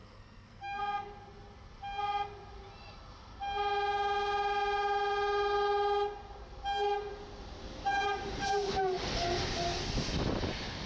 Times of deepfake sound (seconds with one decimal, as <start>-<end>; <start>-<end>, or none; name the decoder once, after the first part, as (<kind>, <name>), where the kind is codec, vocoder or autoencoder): 0.0-0.8 (codec, SNAC)